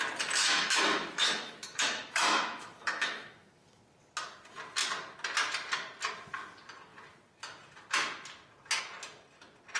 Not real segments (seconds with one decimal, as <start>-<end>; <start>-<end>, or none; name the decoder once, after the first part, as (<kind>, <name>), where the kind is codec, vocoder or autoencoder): 0.4-3.8 (autoencoder, DAC-VAE)